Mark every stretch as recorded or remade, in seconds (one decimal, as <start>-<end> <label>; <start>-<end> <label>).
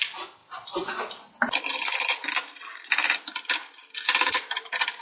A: 0.0-5.0 recorded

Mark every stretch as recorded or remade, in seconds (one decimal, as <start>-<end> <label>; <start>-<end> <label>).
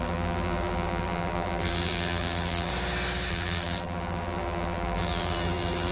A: 0.0-2.7 remade; 2.7-3.3 recorded; 3.3-5.9 remade